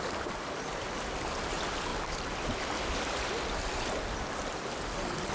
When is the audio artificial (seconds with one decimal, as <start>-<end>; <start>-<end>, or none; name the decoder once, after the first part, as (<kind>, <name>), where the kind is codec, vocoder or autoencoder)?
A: none